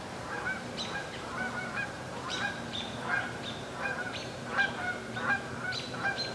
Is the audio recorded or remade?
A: remade